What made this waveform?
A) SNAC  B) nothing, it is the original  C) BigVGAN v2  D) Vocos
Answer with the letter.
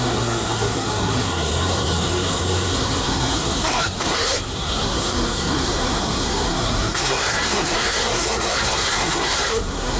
A